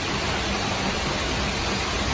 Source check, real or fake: real